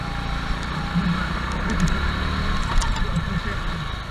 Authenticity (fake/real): real